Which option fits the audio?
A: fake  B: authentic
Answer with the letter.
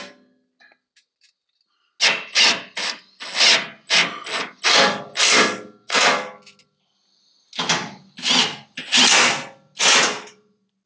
B